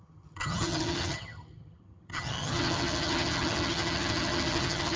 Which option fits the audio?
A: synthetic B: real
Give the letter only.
A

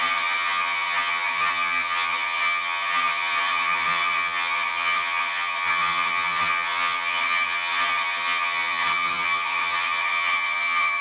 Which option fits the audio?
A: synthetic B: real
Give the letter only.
A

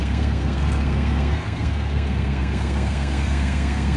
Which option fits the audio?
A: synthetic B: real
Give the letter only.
A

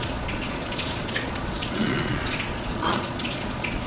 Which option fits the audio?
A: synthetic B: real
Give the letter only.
A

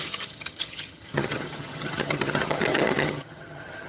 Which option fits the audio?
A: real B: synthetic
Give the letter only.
B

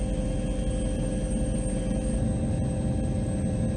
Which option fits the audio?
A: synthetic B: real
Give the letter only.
B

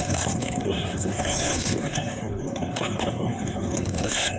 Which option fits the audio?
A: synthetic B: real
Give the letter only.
A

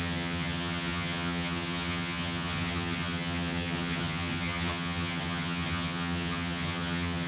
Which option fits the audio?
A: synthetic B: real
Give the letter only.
A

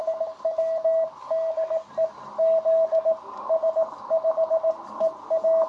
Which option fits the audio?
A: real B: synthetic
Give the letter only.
A